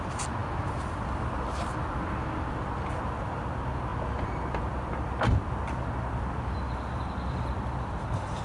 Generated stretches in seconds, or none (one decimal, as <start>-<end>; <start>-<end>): none